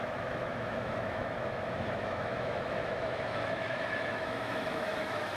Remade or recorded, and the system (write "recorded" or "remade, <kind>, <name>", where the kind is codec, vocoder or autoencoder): remade, autoencoder, DAC-VAE